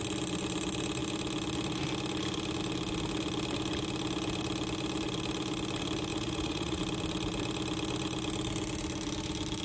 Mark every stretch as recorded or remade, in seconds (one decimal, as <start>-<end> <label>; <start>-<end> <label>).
0.0-6.1 recorded; 6.1-6.8 remade; 6.8-9.6 recorded